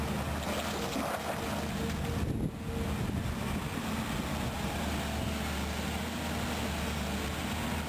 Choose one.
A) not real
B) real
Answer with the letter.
B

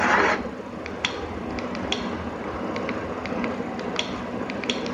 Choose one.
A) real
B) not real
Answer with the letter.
A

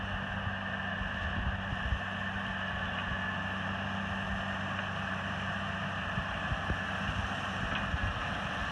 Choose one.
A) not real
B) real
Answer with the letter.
B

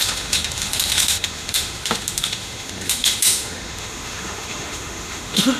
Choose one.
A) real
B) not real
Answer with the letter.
B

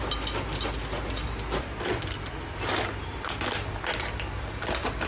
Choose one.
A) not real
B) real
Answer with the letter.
B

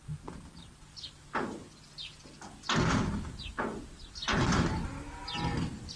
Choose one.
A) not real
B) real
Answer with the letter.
B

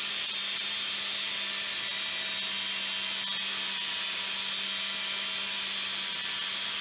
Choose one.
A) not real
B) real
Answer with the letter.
B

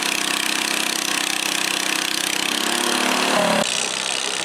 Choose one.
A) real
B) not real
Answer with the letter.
A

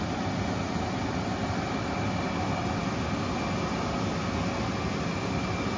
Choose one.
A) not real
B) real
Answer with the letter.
B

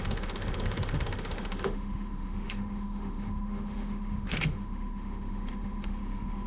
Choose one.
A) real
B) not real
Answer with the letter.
B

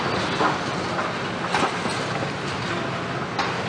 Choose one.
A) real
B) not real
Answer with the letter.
A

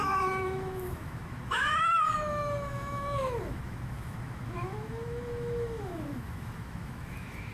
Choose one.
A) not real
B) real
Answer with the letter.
A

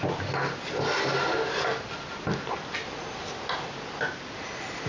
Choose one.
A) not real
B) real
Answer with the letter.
B